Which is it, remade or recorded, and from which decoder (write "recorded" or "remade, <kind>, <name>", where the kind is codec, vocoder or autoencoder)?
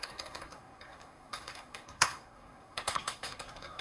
remade, codec, SNAC